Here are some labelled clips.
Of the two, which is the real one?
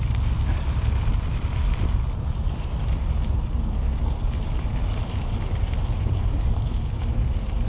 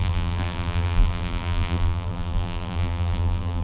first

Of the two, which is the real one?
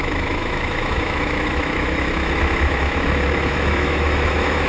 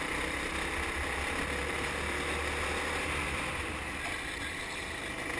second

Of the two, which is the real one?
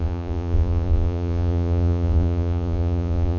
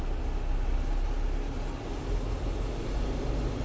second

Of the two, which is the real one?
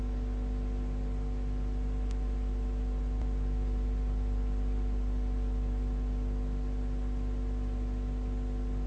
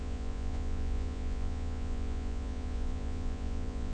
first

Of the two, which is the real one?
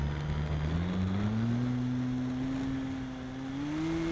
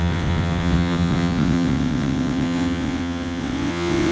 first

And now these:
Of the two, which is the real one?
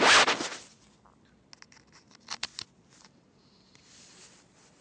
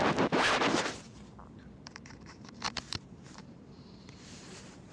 first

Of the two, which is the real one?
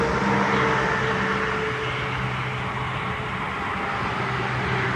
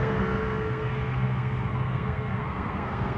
first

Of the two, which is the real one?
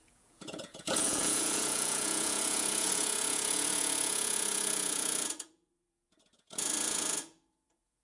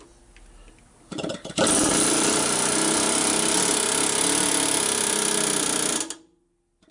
second